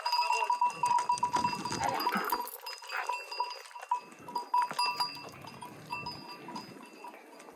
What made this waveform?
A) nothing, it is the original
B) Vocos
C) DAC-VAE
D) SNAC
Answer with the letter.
A